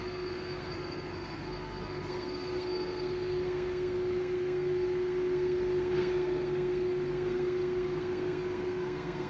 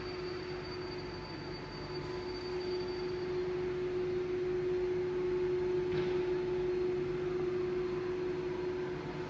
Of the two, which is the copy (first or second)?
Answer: first